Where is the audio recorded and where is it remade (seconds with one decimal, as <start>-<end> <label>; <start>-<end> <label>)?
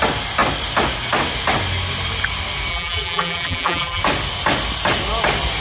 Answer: 0.0-2.7 recorded; 2.7-4.0 remade; 4.0-5.6 recorded